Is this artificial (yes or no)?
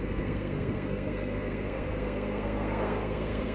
yes